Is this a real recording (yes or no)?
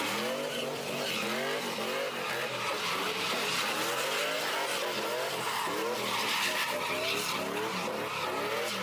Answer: yes